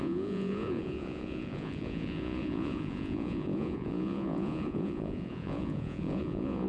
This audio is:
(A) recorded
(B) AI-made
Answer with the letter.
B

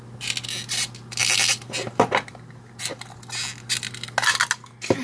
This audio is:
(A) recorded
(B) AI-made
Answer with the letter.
A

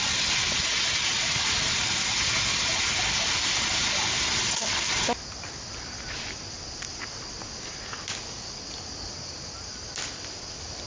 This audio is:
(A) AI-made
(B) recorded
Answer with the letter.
B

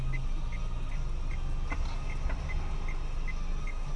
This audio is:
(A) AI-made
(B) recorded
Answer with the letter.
B